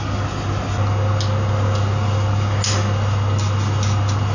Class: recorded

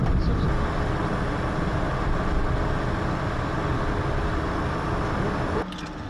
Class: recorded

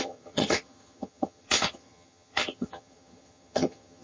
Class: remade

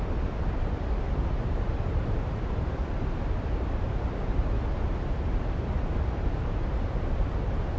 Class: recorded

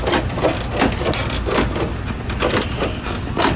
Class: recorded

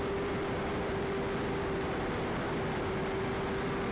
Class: recorded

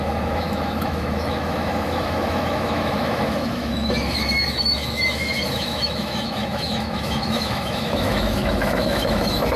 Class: remade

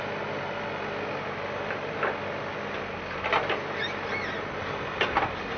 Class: recorded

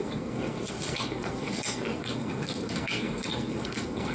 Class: remade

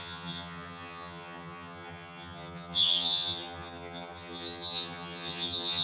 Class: remade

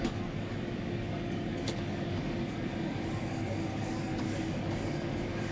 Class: remade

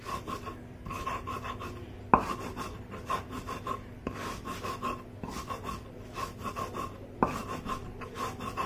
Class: recorded